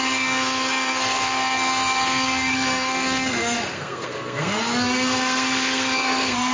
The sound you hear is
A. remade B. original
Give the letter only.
A